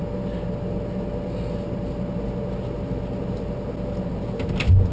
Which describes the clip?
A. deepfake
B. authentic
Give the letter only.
B